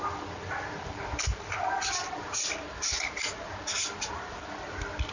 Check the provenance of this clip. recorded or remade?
recorded